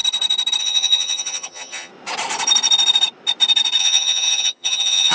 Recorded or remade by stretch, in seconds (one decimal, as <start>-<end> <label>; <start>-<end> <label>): 0.0-0.6 recorded; 0.6-1.9 remade; 1.9-3.8 recorded; 3.8-5.1 remade